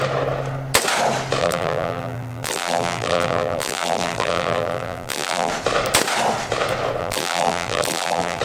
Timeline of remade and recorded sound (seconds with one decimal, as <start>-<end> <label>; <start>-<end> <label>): 0.0-1.4 recorded; 1.4-5.5 remade; 5.5-7.0 recorded; 7.0-8.4 remade